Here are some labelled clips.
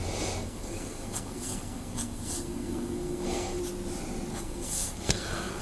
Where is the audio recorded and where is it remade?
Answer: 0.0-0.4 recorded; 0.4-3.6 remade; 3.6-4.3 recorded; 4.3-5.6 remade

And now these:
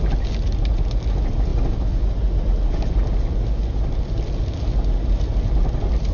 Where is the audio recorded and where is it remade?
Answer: 0.0-6.1 recorded

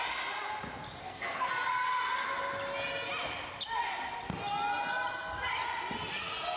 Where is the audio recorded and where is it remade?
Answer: 0.0-1.0 recorded; 1.0-1.5 remade; 1.5-6.6 recorded

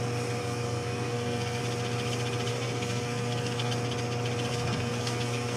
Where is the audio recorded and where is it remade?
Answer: 0.0-0.4 recorded; 0.4-1.6 remade; 1.6-2.5 recorded; 2.5-3.7 remade; 3.7-4.5 recorded; 4.5-5.6 remade

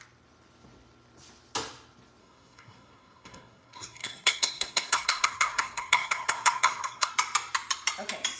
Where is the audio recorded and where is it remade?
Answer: 0.0-2.2 recorded; 2.2-7.1 remade; 7.1-8.4 recorded

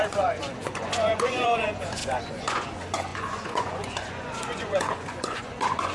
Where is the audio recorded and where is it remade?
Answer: 0.0-5.9 remade

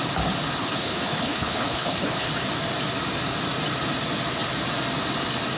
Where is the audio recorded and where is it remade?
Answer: 0.0-0.6 recorded; 0.6-2.3 remade; 2.3-5.6 recorded